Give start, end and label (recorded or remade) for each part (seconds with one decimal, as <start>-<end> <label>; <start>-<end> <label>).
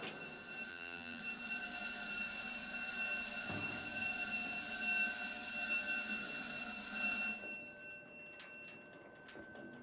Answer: 0.0-0.7 recorded; 0.7-1.2 remade; 1.2-9.8 recorded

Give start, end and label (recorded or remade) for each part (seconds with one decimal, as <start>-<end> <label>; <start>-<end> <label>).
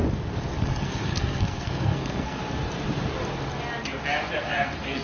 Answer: 0.0-0.5 recorded; 0.5-2.4 remade; 2.4-4.4 recorded; 4.4-5.0 remade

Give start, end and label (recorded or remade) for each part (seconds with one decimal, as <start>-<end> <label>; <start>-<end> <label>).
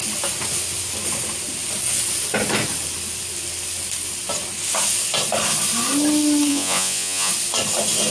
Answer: 0.0-6.5 recorded; 6.5-7.3 remade; 7.3-8.1 recorded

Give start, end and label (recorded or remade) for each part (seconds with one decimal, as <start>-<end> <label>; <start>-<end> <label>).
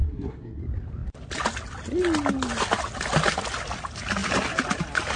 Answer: 0.0-0.6 remade; 0.6-5.2 recorded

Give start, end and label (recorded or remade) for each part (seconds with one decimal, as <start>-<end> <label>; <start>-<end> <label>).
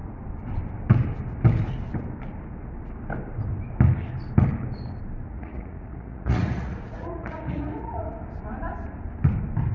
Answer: 0.0-5.3 recorded; 5.3-8.0 remade; 8.0-9.7 recorded